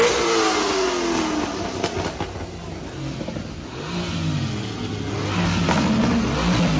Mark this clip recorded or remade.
recorded